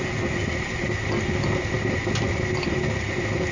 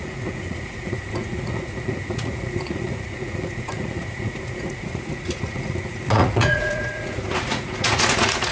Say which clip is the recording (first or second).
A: first